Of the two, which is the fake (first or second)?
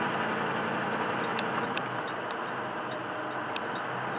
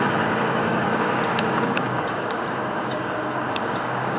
second